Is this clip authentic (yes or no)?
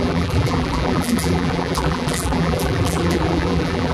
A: no